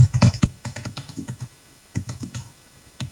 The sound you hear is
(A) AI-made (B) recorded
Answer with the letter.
A